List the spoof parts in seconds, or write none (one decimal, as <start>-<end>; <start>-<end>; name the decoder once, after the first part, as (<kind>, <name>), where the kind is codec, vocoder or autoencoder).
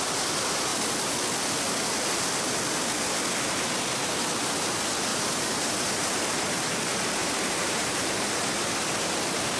5.1-6.7 (vocoder, BigVGAN v2); 7.2-8.8